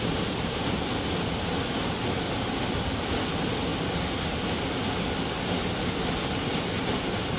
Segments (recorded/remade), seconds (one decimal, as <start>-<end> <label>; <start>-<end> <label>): 0.0-7.4 recorded

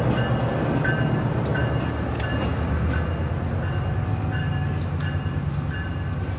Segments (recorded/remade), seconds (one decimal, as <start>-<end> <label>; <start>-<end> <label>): 0.0-6.4 recorded

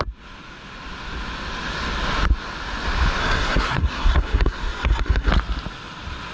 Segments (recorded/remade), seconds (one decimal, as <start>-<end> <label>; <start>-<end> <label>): 0.0-3.2 recorded; 3.2-5.3 remade; 5.3-6.3 recorded